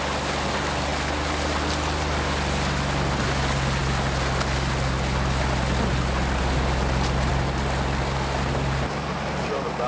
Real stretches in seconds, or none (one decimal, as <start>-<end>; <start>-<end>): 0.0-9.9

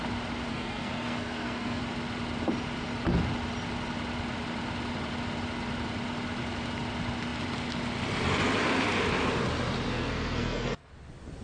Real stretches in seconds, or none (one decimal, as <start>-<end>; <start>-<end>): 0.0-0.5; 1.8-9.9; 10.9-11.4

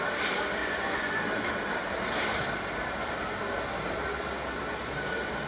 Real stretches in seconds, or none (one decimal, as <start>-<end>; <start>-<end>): 0.0-0.6; 1.1-5.5

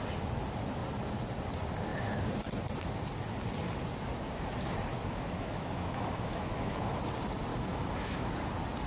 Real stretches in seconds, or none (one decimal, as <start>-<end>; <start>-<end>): 0.0-4.9; 7.0-7.5; 8.3-8.9